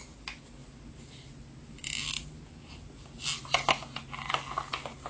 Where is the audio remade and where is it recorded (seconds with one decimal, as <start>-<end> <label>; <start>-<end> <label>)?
0.0-5.1 recorded